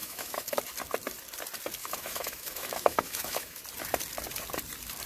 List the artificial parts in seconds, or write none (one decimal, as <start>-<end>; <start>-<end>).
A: 0.0-0.6; 1.8-3.6